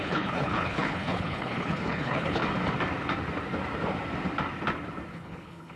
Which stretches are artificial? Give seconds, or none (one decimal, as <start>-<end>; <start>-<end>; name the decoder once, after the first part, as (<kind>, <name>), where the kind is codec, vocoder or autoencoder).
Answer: 0.0-2.4 (codec, HILCodec); 5.1-5.8